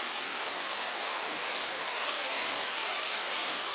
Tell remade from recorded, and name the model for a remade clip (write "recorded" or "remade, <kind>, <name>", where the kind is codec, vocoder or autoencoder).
remade, codec, DAC